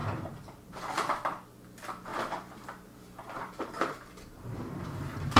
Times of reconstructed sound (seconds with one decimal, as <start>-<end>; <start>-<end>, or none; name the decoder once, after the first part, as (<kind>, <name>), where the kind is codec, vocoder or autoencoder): 0.0-0.7 (vocoder, BigVGAN v2); 2.1-5.4